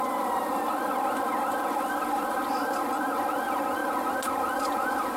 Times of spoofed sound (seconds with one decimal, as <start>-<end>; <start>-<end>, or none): none